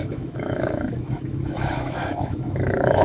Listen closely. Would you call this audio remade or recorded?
remade